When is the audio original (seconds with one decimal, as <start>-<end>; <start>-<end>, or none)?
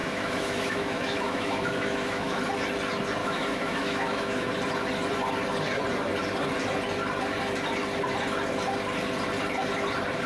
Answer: 2.4-3.2; 4.5-10.3